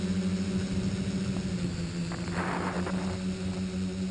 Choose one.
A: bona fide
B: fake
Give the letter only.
A